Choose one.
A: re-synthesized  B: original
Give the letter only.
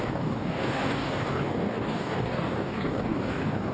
A